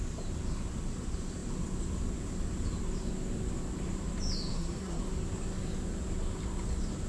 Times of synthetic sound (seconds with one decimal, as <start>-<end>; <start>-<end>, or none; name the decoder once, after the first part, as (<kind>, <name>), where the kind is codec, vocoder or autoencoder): 4.5-5.0 (codec, SNAC)